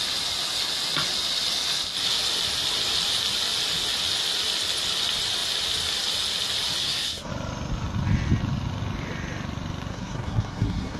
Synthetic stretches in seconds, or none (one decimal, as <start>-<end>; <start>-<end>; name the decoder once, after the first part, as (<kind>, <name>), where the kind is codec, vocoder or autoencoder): 6.8-7.3 (codec, SNAC); 9.9-11.0